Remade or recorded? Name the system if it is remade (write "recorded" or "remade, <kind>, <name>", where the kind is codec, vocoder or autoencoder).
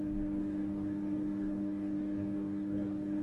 remade, codec, DAC